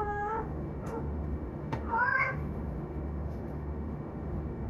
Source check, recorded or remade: remade